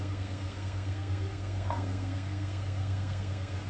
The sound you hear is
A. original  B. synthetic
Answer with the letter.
B